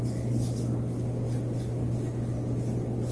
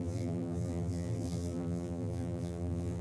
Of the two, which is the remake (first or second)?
second